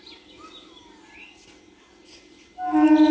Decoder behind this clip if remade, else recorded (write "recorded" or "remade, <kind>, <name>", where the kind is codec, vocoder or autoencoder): recorded